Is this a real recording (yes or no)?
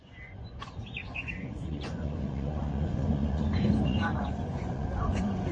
no